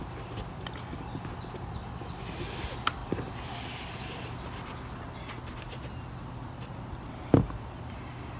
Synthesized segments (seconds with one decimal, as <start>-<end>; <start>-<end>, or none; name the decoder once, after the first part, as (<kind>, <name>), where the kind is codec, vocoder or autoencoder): none